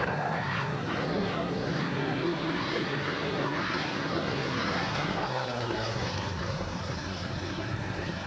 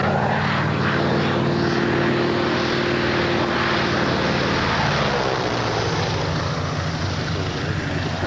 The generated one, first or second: first